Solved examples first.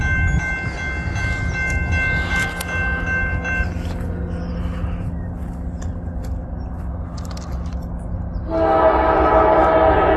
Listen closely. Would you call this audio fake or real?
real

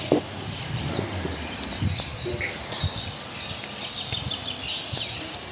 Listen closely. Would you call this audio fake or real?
real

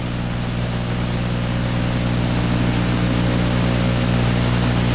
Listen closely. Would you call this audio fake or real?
real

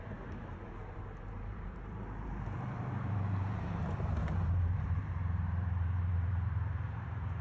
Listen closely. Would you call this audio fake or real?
fake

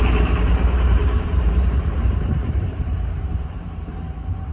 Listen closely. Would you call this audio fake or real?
fake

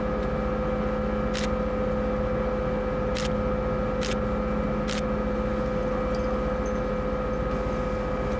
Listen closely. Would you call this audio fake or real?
real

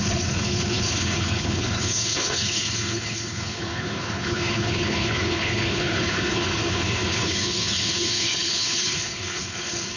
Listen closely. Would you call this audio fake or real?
fake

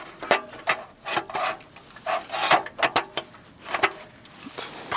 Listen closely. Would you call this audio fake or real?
real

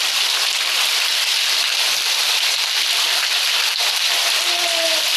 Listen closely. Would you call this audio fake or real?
fake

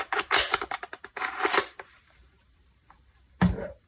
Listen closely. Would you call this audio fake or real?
fake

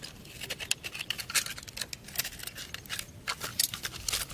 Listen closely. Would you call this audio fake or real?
real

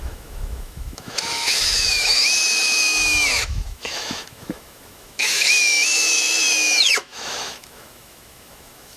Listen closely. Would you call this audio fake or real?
fake